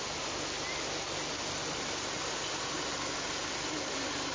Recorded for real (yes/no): yes